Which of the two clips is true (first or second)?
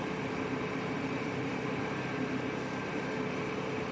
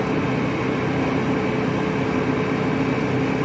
second